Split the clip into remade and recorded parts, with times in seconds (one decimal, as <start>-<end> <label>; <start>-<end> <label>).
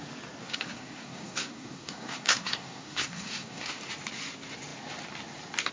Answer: 0.0-0.4 recorded; 0.4-3.8 remade; 3.8-5.7 recorded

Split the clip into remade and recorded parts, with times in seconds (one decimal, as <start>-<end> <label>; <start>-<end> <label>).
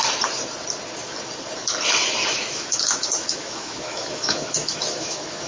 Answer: 0.0-2.2 recorded; 2.2-5.5 remade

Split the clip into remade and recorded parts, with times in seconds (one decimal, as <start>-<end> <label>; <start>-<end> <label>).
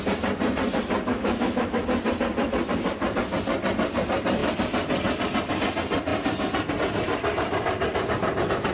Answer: 0.0-1.1 recorded; 1.1-1.8 remade; 1.8-8.7 recorded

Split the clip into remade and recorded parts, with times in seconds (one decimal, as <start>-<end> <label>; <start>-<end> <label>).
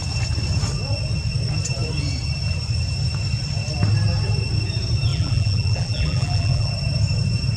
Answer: 0.0-5.1 recorded; 5.1-6.7 remade; 6.7-7.6 recorded